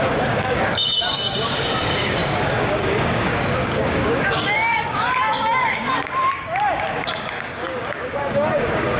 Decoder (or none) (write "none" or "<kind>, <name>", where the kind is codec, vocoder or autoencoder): codec, DAC